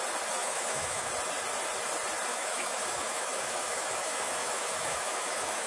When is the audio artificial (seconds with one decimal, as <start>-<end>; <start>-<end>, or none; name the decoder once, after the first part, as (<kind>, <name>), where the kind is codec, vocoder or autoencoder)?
0.4-1.1 (autoencoder, DAC-VAE); 2.3-5.7